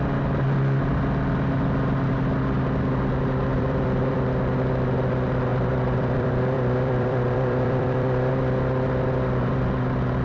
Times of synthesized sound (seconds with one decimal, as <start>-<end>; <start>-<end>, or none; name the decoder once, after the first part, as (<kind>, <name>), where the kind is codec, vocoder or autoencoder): 3.5-4.2 (vocoder, BigVGAN v2); 5.5-8.3